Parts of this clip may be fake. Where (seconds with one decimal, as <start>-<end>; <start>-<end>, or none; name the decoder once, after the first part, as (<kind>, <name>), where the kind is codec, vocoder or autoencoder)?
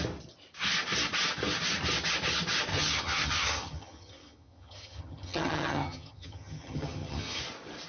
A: 2.7-7.4 (vocoder, HiFi-GAN)